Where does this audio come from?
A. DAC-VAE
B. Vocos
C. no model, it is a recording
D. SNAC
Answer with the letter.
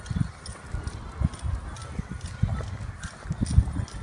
C